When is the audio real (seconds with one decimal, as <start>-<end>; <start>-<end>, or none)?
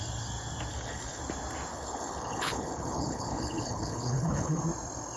0.0-0.7; 1.2-1.7; 4.6-5.2